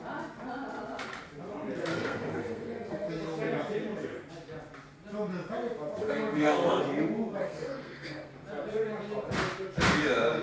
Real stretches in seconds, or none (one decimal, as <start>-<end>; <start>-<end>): 0.0-1.9; 3.1-6.0; 6.8-7.4; 8.3-10.4